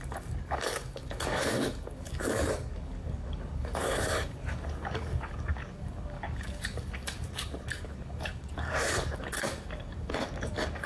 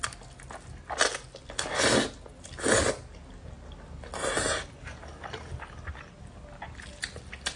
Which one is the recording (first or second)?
second